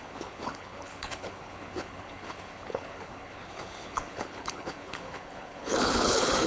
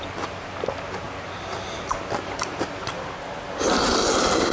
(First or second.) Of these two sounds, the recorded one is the second